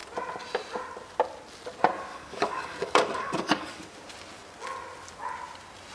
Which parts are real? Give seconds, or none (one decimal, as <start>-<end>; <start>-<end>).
0.0-2.1; 3.8-5.9